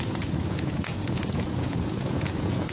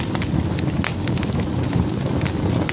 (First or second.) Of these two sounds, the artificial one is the first